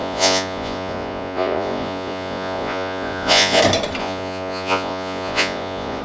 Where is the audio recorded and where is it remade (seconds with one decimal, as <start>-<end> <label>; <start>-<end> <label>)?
0.0-3.6 remade; 3.6-4.0 recorded; 4.0-6.0 remade